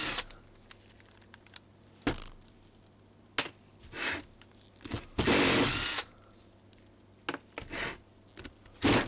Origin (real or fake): real